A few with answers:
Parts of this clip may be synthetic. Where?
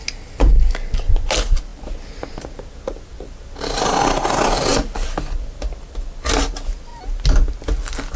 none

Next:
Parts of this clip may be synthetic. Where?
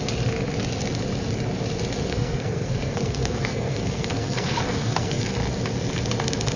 2.1-5.3 (codec, SNAC)